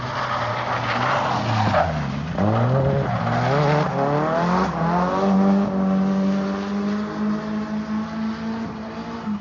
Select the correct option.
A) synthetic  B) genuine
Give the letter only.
B